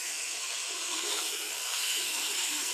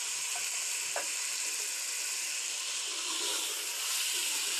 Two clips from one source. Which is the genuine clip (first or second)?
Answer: second